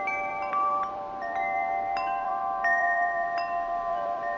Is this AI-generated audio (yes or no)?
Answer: yes